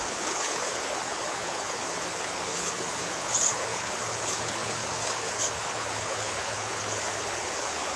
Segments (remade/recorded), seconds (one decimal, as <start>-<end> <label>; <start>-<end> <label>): 0.0-8.0 remade